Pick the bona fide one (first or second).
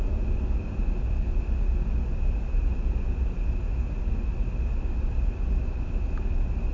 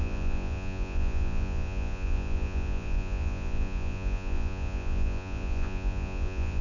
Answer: first